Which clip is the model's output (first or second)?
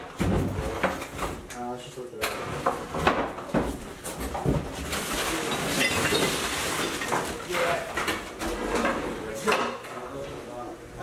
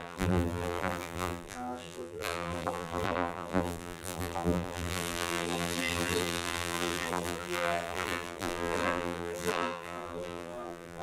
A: second